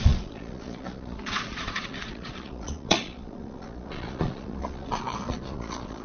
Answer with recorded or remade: remade